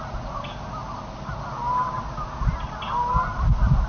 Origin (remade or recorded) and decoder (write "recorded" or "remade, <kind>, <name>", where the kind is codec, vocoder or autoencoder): recorded